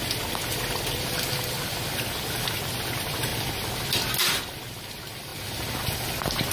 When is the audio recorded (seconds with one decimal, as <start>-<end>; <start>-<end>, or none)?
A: 0.0-6.5